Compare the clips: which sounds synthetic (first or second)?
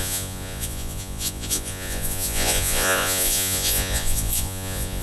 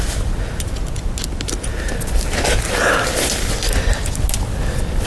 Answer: first